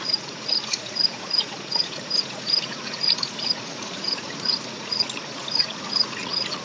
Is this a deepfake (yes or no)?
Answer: yes